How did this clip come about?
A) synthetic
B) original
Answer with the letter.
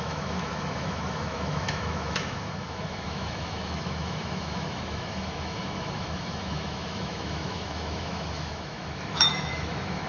A